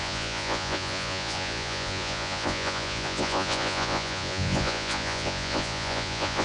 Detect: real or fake fake